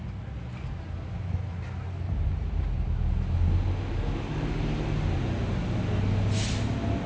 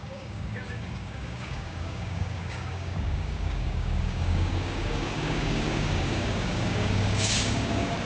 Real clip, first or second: first